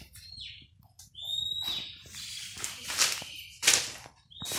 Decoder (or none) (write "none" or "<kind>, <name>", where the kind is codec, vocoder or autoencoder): none